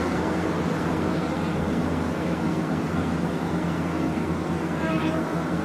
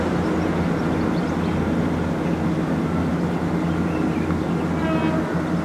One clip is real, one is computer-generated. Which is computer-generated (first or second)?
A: first